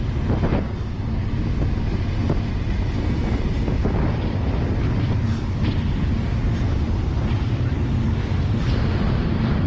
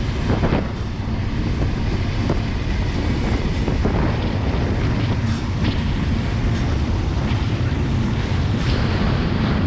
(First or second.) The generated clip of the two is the second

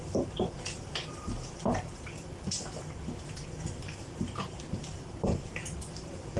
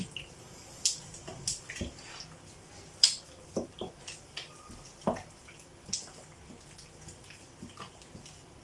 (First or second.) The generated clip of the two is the first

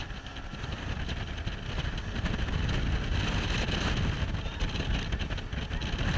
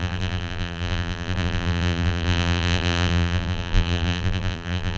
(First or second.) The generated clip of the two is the second